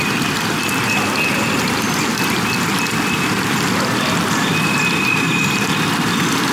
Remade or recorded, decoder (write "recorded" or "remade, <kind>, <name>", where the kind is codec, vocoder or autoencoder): recorded